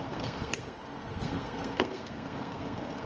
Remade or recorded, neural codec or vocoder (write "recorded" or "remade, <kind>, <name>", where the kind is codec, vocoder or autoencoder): remade, codec, SNAC